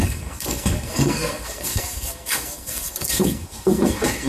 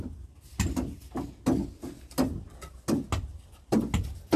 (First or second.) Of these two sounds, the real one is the second